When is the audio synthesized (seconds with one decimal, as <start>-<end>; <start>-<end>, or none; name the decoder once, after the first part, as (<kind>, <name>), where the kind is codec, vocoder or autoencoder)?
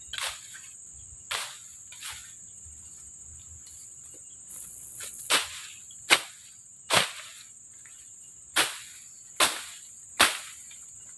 4.5-5.3 (vocoder, WaveNeXt)